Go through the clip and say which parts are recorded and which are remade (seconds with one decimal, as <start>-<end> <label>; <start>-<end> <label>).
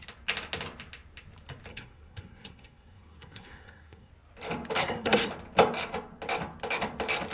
0.0-1.7 recorded; 1.7-4.1 remade; 4.1-4.8 recorded; 4.8-5.3 remade; 5.3-7.3 recorded